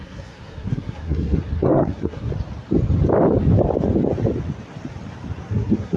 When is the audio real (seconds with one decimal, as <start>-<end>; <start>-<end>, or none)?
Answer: 2.3-5.5